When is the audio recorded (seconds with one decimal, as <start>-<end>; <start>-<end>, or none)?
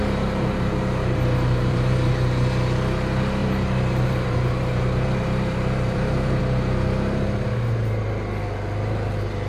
2.1-3.4; 6.4-9.5